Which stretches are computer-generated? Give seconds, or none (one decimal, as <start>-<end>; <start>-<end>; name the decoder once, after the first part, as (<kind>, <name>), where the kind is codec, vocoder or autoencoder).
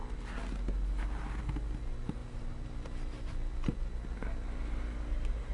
none